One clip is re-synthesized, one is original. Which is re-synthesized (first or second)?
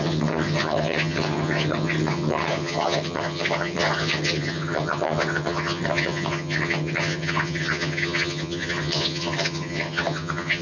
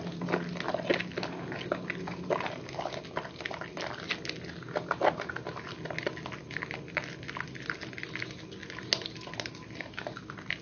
first